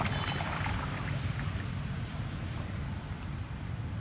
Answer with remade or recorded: recorded